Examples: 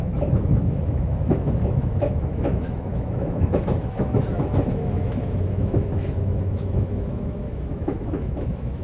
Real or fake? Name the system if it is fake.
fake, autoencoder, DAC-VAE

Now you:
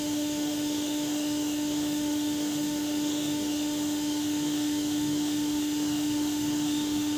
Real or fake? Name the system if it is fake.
fake, autoencoder, DAC-VAE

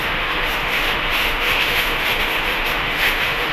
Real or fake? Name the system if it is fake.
fake, autoencoder, DAC-VAE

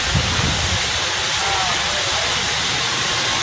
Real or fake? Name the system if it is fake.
real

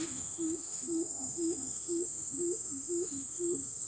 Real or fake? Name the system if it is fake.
fake, autoencoder, DAC-VAE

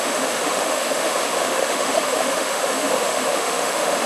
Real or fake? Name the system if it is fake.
fake, autoencoder, DAC-VAE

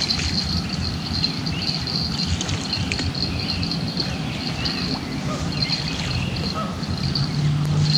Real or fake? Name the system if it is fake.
real